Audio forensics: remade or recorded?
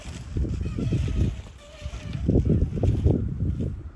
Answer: recorded